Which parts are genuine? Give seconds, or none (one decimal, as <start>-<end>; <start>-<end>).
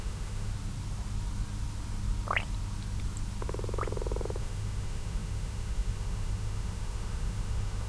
0.5-4.4